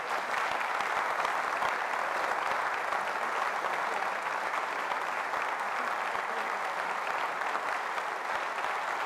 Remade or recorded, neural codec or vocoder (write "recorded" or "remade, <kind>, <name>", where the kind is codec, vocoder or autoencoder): recorded